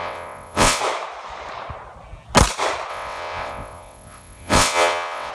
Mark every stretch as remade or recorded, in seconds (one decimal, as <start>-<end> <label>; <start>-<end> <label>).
0.0-0.8 remade; 0.8-2.9 recorded; 2.9-5.3 remade